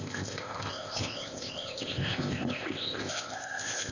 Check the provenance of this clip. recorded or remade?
remade